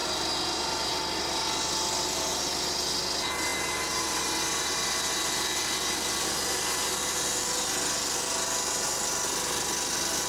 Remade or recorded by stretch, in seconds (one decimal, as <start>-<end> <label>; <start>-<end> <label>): 0.0-10.3 recorded